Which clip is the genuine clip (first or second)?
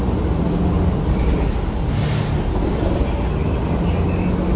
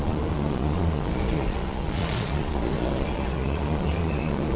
first